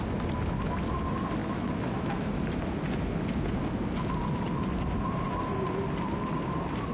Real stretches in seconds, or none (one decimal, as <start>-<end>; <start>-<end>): 0.0-1.4; 2.3-6.9